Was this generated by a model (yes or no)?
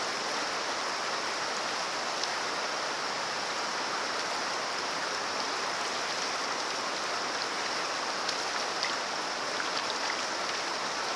no